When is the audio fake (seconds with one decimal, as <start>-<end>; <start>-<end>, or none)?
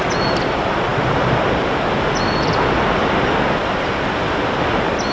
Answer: none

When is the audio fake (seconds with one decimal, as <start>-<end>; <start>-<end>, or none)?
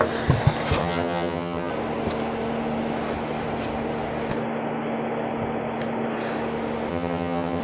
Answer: 0.8-1.7; 6.9-7.6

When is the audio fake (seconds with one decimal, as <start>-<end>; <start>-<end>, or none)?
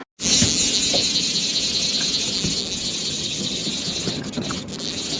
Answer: 3.1-3.6; 4.1-4.7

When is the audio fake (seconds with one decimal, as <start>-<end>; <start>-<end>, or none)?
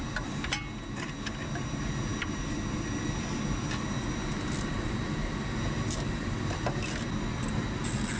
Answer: none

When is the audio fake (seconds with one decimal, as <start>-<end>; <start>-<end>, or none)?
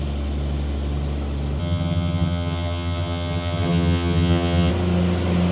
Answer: 1.6-4.7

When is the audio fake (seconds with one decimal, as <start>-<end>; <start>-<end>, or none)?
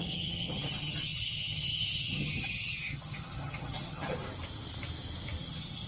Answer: 0.0-4.2; 5.4-5.9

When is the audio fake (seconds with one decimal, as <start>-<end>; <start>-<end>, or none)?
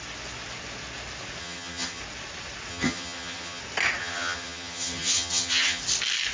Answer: 1.4-2.0; 2.7-3.6; 4.0-5.8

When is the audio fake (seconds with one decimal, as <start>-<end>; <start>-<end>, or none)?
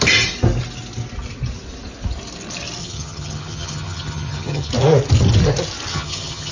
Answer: 2.8-4.7; 5.9-6.5